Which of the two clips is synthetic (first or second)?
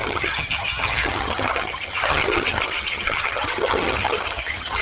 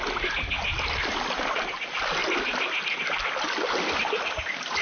first